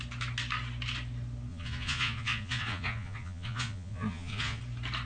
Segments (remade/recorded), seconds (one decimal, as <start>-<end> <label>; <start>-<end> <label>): 0.0-1.5 recorded; 1.5-4.6 remade; 4.6-5.1 recorded